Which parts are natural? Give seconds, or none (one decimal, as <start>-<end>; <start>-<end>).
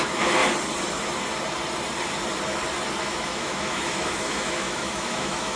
0.4-3.0